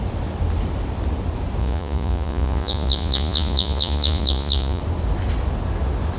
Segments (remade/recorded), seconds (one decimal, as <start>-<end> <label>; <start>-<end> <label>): 0.0-1.6 recorded; 1.6-4.8 remade; 4.8-6.2 recorded